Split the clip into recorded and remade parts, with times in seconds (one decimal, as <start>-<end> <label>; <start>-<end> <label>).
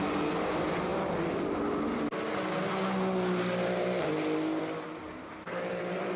0.0-6.2 recorded